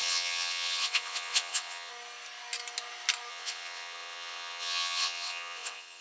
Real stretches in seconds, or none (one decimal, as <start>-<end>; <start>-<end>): 1.9-3.3